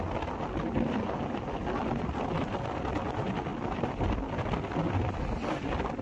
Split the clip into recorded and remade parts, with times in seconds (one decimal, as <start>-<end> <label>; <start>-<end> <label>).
0.0-6.0 recorded